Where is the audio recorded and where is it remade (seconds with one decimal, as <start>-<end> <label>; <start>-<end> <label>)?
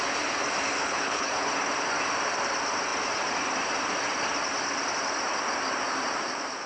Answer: 0.0-0.8 recorded; 0.8-1.5 remade; 1.5-6.7 recorded